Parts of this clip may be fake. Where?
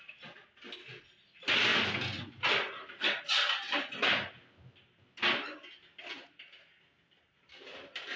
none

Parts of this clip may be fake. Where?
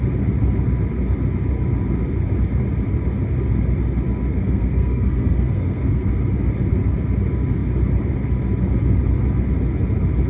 4.3-6.1 (codec, SNAC)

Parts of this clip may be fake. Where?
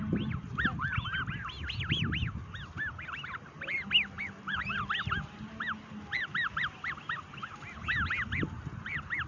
none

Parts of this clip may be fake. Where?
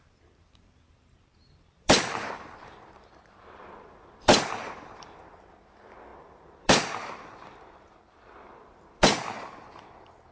0.0-10.3 (vocoder, BigVGAN v2)